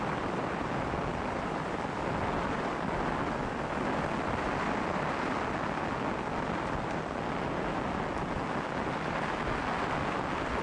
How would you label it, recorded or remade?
recorded